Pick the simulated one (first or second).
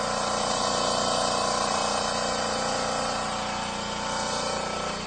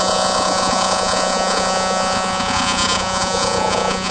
second